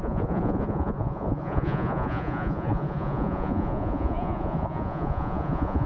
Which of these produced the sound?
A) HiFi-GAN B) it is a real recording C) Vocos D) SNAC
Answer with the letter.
C